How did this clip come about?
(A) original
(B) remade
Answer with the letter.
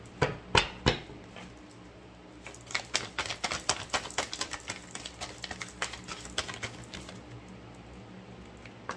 A